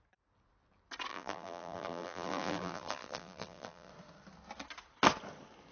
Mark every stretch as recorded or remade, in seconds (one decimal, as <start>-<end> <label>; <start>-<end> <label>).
0.0-1.1 recorded; 1.1-3.9 remade; 3.9-5.7 recorded